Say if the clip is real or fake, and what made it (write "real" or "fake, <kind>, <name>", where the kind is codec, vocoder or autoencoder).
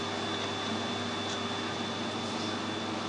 real